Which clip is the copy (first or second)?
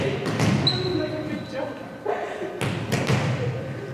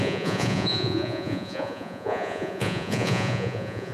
second